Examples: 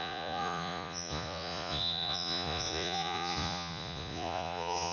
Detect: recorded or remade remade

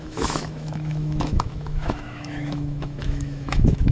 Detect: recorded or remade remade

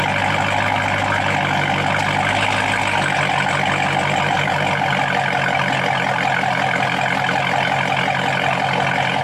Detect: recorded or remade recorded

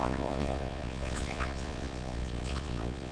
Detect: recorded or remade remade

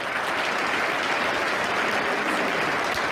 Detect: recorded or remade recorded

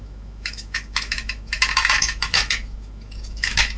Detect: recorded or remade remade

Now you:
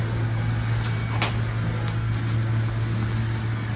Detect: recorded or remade recorded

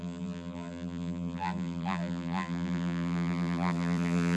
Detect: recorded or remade remade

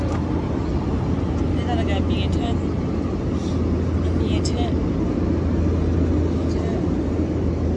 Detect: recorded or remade recorded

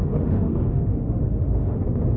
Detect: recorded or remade remade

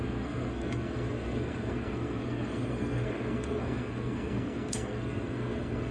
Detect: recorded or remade remade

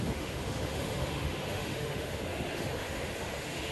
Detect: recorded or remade remade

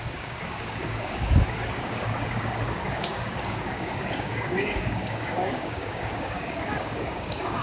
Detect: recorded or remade remade